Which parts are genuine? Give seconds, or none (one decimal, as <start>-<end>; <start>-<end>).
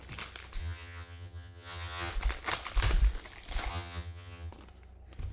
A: 0.0-0.6; 2.1-3.7; 4.5-5.3